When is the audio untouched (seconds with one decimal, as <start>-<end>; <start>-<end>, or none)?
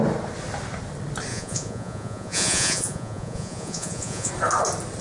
0.0-1.3; 4.3-5.0